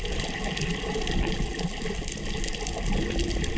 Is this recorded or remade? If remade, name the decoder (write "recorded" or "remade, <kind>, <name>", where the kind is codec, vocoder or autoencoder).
recorded